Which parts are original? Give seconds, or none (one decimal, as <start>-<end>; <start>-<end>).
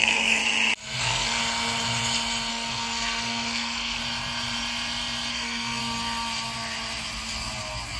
0.4-1.0; 1.4-2.5; 4.0-5.3; 5.8-8.0